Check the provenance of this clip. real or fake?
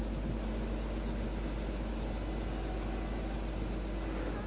real